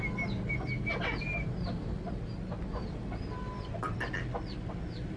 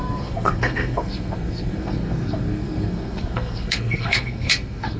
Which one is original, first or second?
first